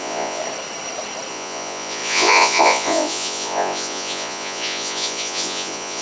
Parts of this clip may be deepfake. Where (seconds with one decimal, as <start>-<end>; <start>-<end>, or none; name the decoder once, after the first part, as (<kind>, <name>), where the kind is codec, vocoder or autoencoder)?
0.0-0.4 (vocoder, Vocos); 1.3-6.0